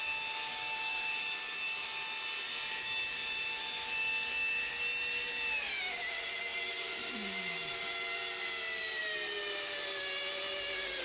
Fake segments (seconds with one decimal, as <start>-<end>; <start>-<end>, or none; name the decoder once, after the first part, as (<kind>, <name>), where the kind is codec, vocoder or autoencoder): 0.5-1.1 (codec, DAC)